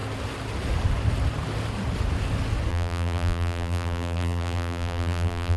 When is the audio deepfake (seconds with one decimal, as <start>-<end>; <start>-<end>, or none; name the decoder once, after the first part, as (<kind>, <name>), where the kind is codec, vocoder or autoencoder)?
2.7-5.6 (vocoder, BigVGAN v2)